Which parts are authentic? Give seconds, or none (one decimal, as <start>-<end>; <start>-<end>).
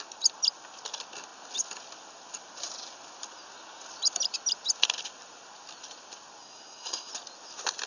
0.0-6.4; 7.1-7.9